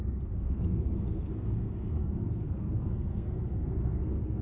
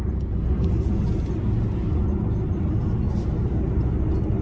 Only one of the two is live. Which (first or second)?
second